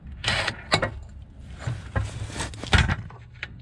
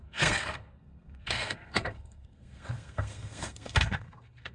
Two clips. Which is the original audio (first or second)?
first